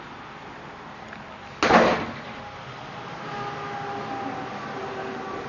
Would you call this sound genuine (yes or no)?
yes